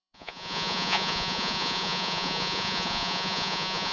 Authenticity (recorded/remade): remade